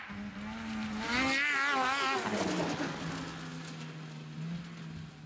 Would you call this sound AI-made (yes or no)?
no